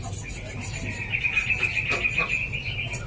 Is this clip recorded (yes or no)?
yes